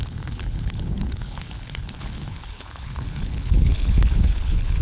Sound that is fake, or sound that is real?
fake